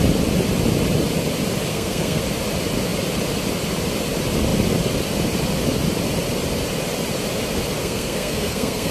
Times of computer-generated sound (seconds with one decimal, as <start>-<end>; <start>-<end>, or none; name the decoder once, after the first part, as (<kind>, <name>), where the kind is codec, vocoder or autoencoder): 1.7-2.2 (codec, SNAC); 7.8-8.9